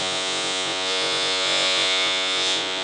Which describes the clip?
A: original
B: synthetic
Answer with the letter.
B